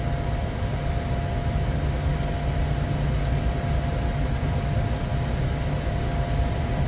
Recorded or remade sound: recorded